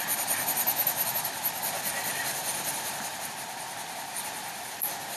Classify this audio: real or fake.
fake